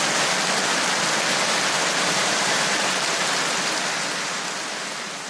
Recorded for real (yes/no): yes